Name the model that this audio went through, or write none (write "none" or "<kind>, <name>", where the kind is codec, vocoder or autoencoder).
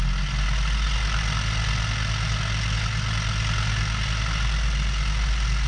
none